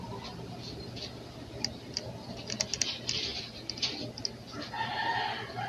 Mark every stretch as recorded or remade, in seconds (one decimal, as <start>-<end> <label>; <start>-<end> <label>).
0.0-5.7 recorded